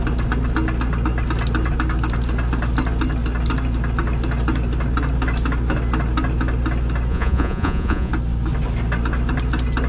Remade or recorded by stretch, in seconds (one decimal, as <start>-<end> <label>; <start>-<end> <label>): 0.0-7.1 recorded; 7.1-8.1 remade; 8.1-9.9 recorded